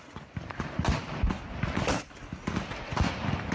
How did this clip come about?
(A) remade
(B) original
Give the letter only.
A